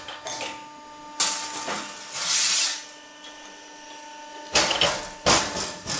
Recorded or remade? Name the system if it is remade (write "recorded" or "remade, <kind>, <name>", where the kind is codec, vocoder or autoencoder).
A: recorded